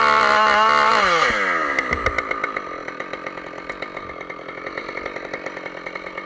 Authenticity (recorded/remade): recorded